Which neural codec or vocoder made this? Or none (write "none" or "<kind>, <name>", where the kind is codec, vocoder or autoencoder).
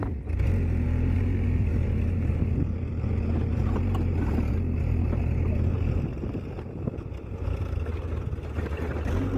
none